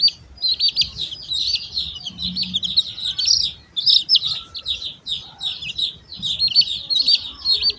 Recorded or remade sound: recorded